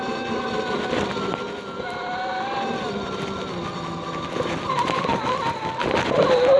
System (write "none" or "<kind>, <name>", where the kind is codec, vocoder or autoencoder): none